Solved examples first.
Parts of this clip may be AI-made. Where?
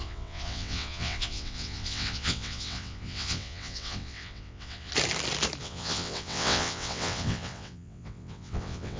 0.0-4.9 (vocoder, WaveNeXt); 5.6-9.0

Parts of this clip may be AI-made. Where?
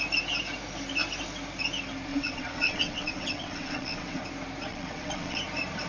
2.1-4.2 (vocoder, WaveNeXt); 4.7-5.4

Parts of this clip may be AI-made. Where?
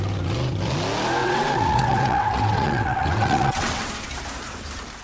1.2-3.9 (vocoder, WaveNeXt)